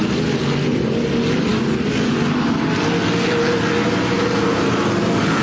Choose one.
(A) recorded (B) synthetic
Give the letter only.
A